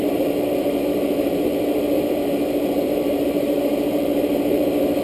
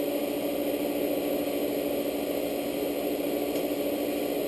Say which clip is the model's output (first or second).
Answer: first